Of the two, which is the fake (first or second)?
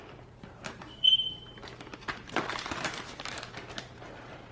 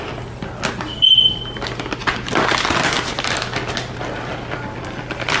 first